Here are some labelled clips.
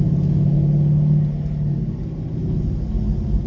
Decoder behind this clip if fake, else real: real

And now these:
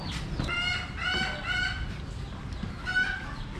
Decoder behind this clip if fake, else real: real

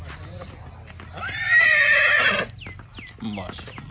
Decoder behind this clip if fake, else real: real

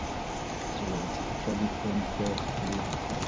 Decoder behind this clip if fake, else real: fake, vocoder, BigVGAN v2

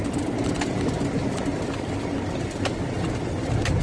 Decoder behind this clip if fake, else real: real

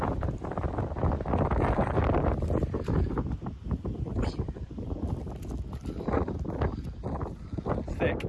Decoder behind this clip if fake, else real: real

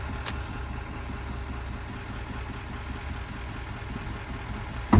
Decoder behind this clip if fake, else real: real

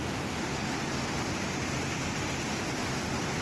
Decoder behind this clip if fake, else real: real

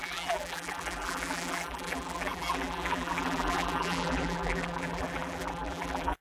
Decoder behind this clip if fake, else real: fake, vocoder, BigVGAN v2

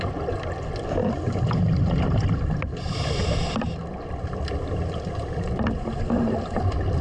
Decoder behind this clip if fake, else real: real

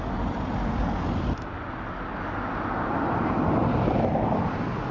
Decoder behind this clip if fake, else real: real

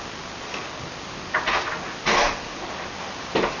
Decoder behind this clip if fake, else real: real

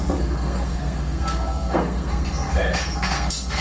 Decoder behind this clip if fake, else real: fake, codec, SNAC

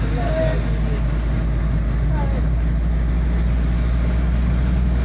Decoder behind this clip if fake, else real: real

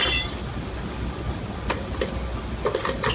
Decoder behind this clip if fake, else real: real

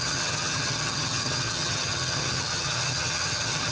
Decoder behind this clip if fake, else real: fake, vocoder, HiFi-GAN